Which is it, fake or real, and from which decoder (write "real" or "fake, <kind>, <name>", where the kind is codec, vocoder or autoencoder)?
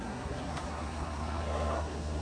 fake, codec, SNAC